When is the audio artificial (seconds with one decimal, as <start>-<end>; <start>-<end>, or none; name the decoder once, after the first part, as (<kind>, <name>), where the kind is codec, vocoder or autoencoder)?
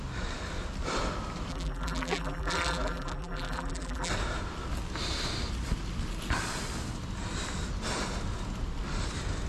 1.5-4.1 (vocoder, BigVGAN v2)